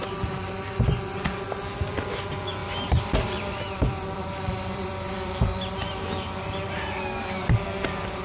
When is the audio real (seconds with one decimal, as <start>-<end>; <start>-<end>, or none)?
0.0-2.6; 5.9-8.2